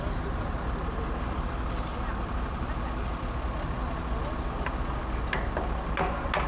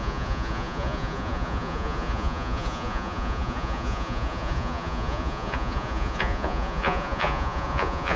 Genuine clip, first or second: first